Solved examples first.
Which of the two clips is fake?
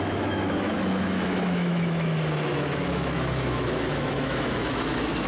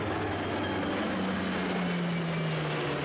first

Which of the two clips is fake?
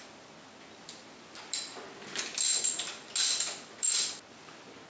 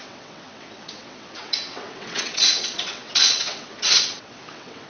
second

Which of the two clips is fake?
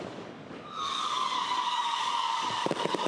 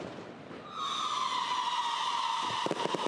first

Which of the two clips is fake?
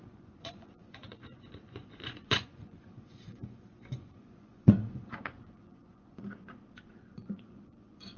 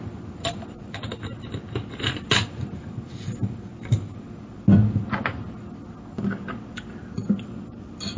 first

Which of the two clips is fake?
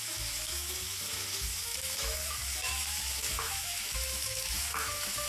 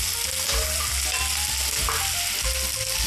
first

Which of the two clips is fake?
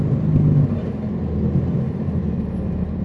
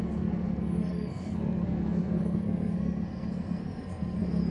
second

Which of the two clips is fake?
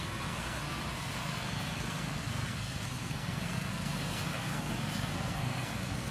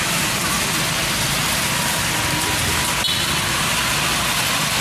first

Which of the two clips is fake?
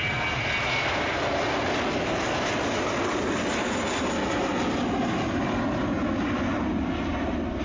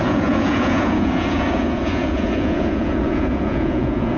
second